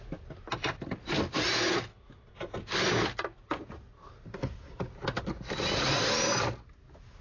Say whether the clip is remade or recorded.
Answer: recorded